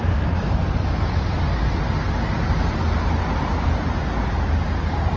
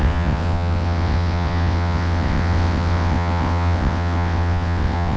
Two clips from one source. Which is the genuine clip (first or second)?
first